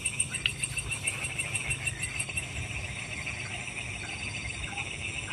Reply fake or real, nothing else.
real